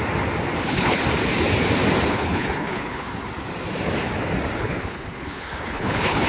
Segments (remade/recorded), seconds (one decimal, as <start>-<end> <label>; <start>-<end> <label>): 0.0-0.6 recorded; 0.6-1.0 remade; 1.0-2.1 recorded; 2.1-3.2 remade; 3.2-4.6 recorded; 4.6-6.3 remade